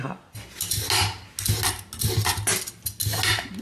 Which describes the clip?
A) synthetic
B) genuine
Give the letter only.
B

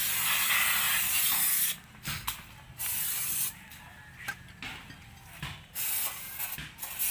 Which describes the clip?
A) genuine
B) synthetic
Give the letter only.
A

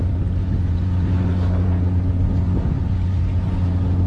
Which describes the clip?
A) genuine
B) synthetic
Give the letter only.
A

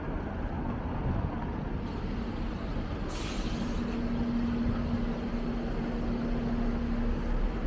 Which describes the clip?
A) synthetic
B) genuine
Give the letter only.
B